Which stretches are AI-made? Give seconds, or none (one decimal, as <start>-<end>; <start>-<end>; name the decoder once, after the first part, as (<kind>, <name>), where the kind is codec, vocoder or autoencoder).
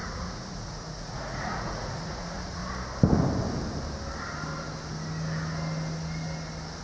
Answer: 0.0-2.6 (vocoder, Vocos)